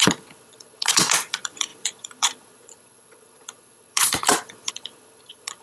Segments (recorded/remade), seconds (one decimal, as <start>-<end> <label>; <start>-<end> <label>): 0.0-5.6 remade